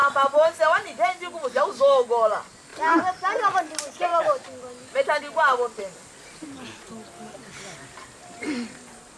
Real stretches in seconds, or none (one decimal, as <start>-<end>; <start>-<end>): 0.0-9.2